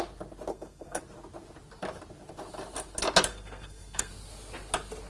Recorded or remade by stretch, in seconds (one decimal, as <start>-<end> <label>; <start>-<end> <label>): 0.0-0.5 recorded; 0.5-1.0 remade; 1.0-3.3 recorded; 3.3-4.1 remade; 4.1-5.1 recorded